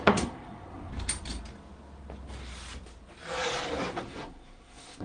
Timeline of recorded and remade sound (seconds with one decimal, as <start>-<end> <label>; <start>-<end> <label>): 0.0-0.9 remade; 0.9-3.9 recorded; 3.9-5.0 remade